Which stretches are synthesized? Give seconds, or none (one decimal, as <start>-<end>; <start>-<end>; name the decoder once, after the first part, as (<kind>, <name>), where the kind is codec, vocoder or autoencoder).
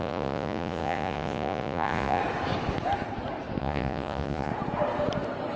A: 0.0-2.2 (vocoder, Vocos); 3.6-4.5